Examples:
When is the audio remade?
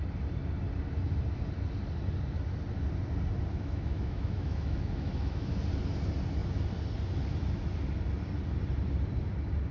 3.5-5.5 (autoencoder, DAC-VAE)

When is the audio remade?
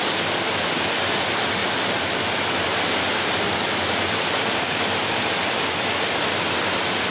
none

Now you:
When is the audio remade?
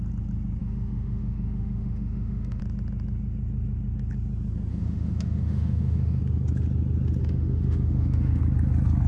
0.6-2.6 (autoencoder, DAC-VAE); 4.7-6.2; 7.2-8.4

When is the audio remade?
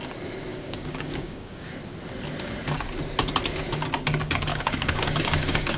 0.5-1.7 (codec, DAC); 4.5-5.8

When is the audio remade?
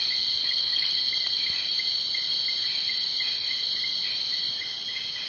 0.4-0.9 (codec, HILCodec)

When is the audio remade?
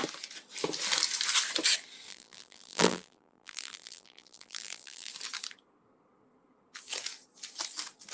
2.1-5.1 (vocoder, BigVGAN v2)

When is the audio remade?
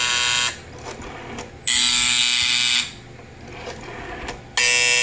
none